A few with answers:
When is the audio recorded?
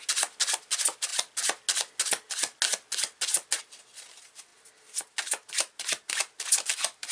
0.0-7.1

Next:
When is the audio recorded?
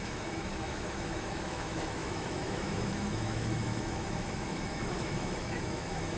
none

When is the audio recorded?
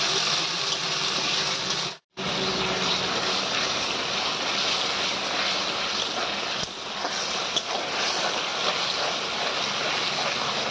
0.0-10.7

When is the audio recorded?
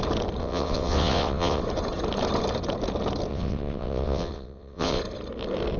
0.0-0.4; 1.6-3.3; 5.0-5.8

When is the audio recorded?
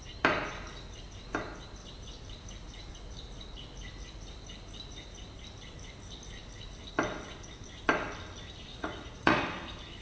0.0-8.7; 9.4-10.0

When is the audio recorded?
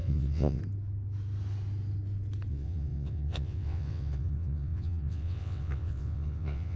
0.6-2.5